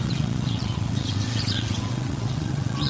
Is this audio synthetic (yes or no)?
yes